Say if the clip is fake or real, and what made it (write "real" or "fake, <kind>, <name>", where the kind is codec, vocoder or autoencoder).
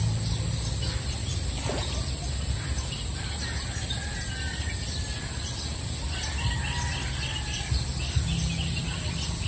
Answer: real